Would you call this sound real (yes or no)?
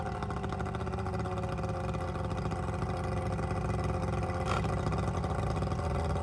yes